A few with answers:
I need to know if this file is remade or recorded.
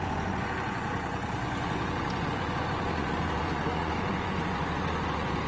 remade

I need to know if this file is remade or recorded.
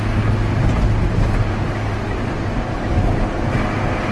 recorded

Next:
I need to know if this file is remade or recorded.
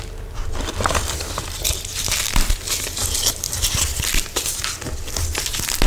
recorded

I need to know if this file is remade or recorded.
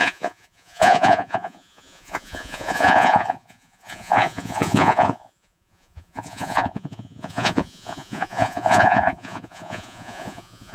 remade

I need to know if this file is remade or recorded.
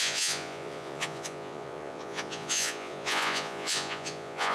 remade